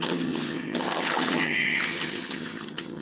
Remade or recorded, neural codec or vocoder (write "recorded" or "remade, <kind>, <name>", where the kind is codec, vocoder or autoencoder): remade, vocoder, HiFi-GAN